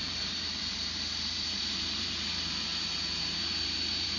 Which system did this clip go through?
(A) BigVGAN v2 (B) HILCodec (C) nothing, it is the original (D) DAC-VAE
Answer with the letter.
A